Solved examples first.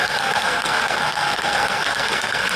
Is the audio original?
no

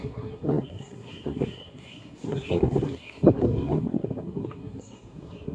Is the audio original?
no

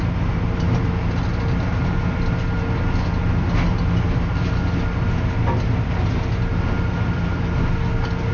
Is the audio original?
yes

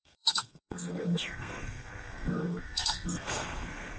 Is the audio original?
no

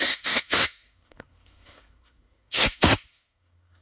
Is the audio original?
no